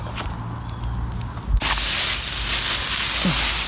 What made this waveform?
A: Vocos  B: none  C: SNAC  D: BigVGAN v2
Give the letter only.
B